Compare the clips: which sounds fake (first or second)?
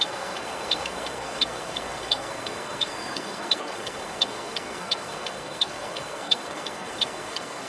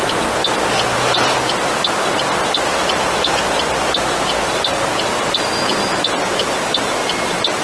first